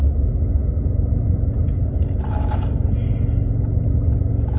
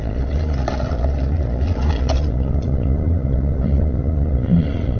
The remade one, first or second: second